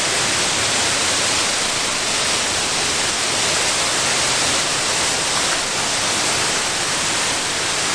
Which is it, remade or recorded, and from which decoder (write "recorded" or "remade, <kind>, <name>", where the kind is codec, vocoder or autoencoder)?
recorded